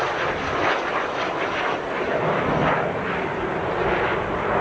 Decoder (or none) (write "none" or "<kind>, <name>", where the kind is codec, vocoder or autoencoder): none